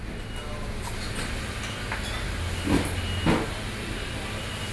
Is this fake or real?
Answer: real